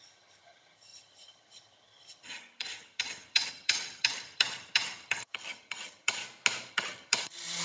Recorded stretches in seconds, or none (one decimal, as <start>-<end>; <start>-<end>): 6.2-6.7